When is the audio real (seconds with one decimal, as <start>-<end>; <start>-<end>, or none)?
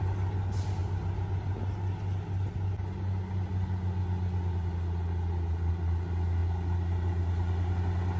0.0-8.2